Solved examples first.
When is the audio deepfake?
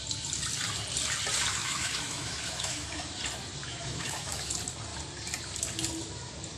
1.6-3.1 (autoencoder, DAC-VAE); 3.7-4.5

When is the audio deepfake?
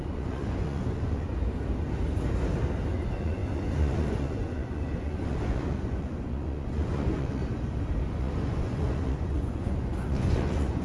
0.0-1.3 (vocoder, Vocos); 2.9-7.4; 8.2-10.8